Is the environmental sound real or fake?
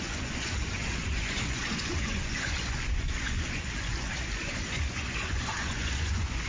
fake